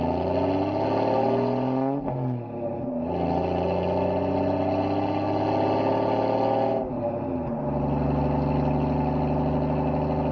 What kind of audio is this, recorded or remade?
recorded